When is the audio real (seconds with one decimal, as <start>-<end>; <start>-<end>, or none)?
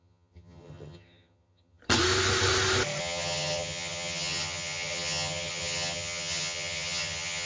1.8-3.0